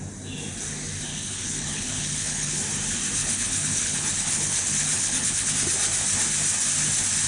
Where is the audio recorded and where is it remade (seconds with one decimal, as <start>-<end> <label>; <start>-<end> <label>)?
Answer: 0.0-1.1 recorded; 1.1-2.6 remade; 2.6-3.2 recorded; 3.2-5.5 remade; 5.5-7.3 recorded

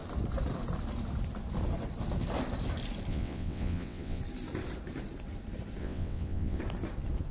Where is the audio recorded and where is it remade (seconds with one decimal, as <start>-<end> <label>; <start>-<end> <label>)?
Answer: 0.0-3.1 recorded; 3.1-4.2 remade; 4.2-5.8 recorded; 5.8-6.6 remade; 6.6-7.3 recorded

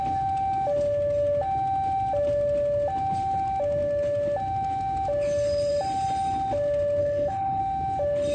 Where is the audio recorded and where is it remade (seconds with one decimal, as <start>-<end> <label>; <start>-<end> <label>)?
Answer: 0.0-7.0 recorded; 7.0-7.6 remade; 7.6-8.3 recorded

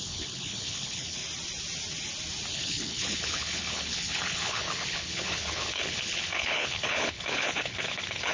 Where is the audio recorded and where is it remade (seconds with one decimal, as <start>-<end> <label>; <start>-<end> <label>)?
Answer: 0.0-1.2 remade; 1.2-2.5 recorded; 2.5-8.3 remade

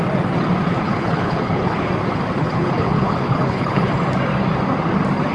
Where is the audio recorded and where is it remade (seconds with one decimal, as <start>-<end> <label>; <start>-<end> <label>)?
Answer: 0.0-0.7 recorded; 0.7-1.9 remade; 1.9-2.4 recorded; 2.4-3.9 remade; 3.9-5.3 recorded

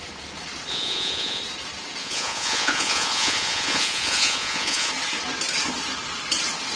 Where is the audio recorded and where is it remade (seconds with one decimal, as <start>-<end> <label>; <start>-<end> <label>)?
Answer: 0.0-0.7 recorded; 0.7-1.4 remade; 1.4-2.0 recorded; 2.0-4.9 remade; 4.9-6.8 recorded